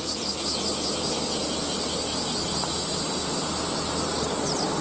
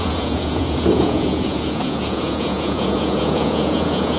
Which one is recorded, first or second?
first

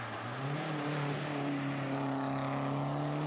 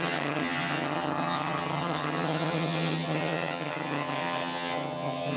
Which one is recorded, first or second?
first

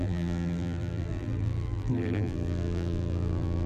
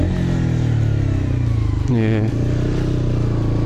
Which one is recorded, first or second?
second